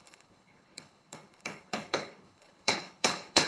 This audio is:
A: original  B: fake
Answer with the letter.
B